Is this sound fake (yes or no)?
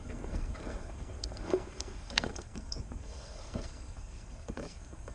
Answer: yes